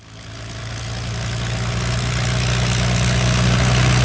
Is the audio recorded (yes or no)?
yes